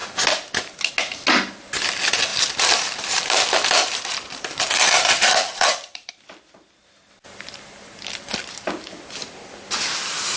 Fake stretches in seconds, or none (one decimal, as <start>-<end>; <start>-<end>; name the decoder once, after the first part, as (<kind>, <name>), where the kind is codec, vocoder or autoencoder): 2.3-6.1 (vocoder, BigVGAN v2)